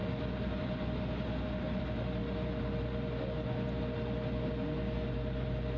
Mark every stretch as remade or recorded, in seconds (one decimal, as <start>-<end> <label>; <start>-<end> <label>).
0.0-5.8 recorded